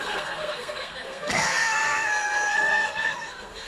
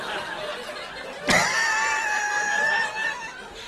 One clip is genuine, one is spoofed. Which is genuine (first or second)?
second